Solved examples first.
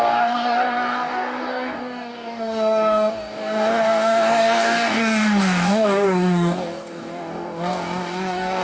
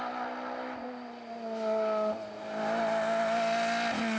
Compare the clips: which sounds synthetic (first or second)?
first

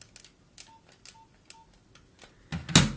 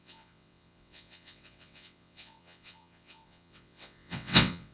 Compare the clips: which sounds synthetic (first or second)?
second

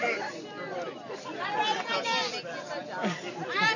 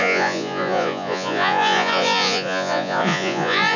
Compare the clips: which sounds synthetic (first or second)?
second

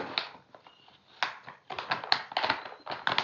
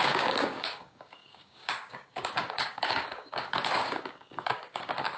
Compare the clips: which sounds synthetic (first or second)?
second